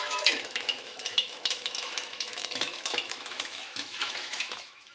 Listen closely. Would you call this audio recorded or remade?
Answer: remade